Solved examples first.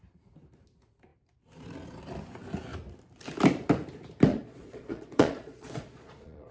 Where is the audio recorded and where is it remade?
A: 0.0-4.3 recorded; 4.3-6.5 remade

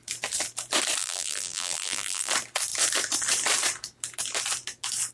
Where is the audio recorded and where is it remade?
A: 0.0-1.0 recorded; 1.0-2.3 remade; 2.3-5.1 recorded

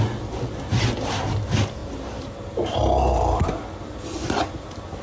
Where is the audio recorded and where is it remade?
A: 0.0-5.0 recorded

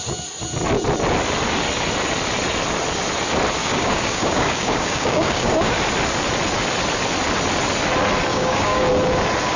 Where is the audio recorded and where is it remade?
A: 0.0-3.6 recorded; 3.6-5.7 remade; 5.7-8.3 recorded; 8.3-8.9 remade; 8.9-9.6 recorded

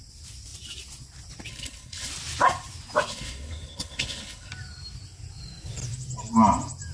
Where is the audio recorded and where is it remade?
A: 0.0-1.5 recorded; 1.5-2.1 remade; 2.1-3.1 recorded; 3.1-4.5 remade; 4.5-6.9 recorded

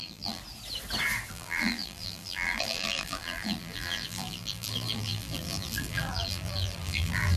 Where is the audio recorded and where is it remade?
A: 0.0-0.4 remade; 0.4-1.3 recorded; 1.3-7.4 remade

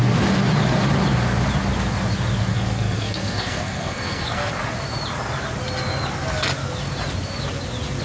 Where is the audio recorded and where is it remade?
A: 0.0-2.5 recorded; 2.5-4.5 remade; 4.5-8.0 recorded